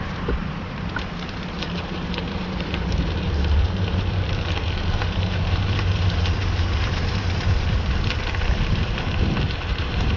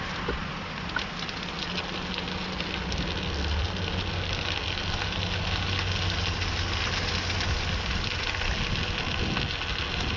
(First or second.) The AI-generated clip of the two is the first